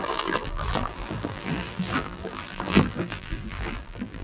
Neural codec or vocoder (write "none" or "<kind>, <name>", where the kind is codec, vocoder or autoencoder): vocoder, BigVGAN v2